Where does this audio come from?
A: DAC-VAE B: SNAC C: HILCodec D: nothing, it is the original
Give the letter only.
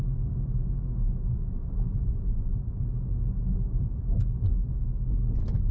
D